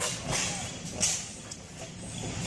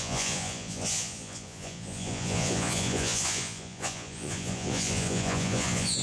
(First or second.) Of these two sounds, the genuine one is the first